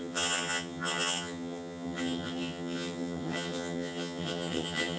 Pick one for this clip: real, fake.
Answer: fake